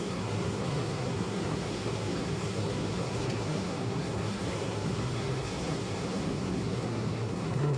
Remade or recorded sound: remade